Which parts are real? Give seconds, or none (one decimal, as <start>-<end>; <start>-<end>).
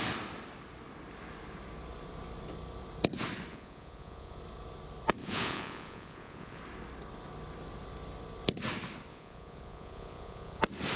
0.0-3.5; 4.4-5.2; 6.6-9.1; 10.6-11.0